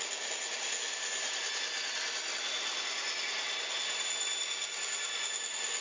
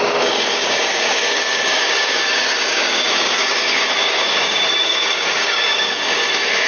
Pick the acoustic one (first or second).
first